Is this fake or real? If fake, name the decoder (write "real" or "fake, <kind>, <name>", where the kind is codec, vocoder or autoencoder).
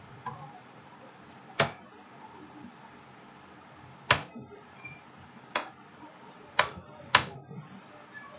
real